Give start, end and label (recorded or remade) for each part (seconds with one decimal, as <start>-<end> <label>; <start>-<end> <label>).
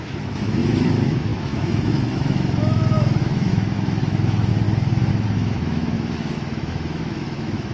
0.0-4.5 remade; 4.5-5.1 recorded; 5.1-7.7 remade